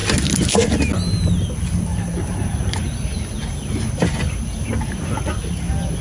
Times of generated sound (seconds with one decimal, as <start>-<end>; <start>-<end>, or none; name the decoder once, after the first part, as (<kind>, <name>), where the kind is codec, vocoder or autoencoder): 1.9-4.2 (vocoder, BigVGAN v2)